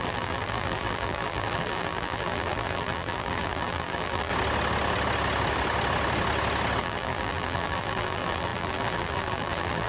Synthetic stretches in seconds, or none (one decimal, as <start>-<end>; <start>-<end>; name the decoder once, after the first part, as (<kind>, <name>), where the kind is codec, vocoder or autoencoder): 0.0-4.3 (vocoder, BigVGAN v2); 6.8-9.9